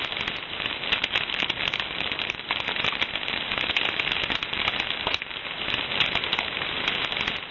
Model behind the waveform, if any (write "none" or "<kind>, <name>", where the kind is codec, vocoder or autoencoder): none